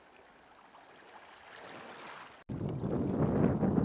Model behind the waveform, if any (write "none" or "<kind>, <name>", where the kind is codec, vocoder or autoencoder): none